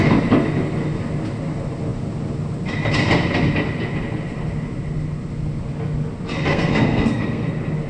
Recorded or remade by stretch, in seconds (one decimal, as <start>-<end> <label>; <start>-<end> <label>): 0.0-6.5 recorded; 6.5-7.5 remade; 7.5-7.9 recorded